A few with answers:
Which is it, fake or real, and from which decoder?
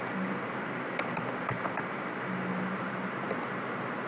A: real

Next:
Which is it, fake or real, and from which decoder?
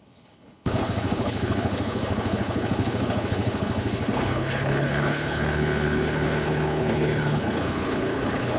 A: fake, codec, HILCodec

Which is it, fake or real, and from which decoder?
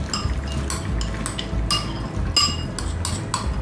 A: real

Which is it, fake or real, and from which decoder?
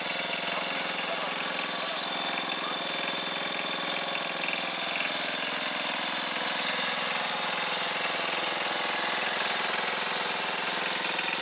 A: real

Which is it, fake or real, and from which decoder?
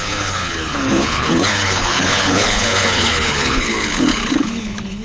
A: fake, codec, HILCodec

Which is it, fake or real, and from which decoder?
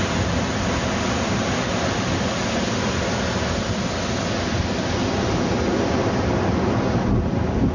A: real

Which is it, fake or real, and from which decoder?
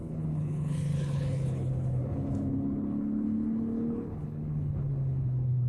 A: fake, codec, HILCodec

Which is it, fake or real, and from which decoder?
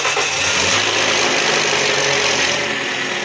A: real